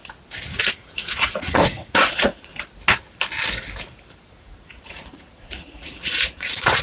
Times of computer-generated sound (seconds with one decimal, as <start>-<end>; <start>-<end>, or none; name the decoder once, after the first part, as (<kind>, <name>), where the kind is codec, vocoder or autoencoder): 0.6-2.5 (vocoder, Vocos); 4.3-6.8